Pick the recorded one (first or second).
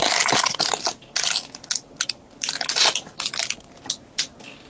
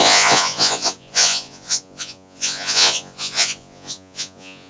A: first